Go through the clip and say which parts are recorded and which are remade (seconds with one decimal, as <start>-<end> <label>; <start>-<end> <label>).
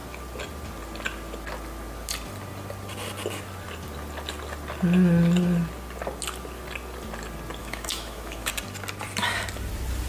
0.0-7.6 recorded; 7.6-8.5 remade; 8.5-10.1 recorded